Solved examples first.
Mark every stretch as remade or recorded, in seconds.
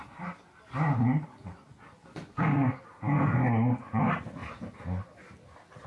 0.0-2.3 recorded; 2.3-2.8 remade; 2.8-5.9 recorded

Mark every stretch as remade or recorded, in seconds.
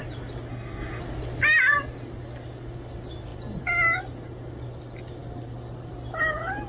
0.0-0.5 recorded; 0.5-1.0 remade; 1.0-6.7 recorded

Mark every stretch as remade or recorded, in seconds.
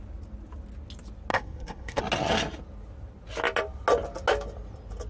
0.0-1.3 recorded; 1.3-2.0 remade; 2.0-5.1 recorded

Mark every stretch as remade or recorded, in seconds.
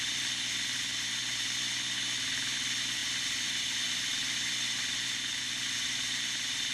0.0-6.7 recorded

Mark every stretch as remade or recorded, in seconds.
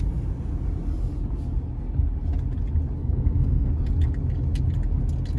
0.0-3.0 recorded; 3.0-3.7 remade; 3.7-5.4 recorded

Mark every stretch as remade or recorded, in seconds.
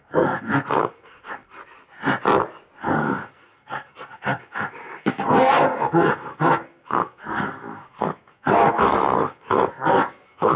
0.0-1.6 remade; 1.6-2.8 recorded; 2.8-10.6 remade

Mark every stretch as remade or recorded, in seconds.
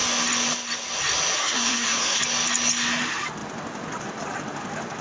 0.0-1.4 recorded; 1.4-2.2 remade; 2.2-5.0 recorded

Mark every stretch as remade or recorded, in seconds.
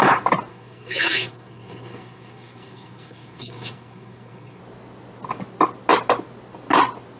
0.0-0.5 recorded; 0.5-4.6 remade; 4.6-7.2 recorded